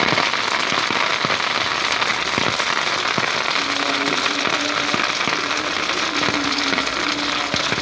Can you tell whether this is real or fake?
real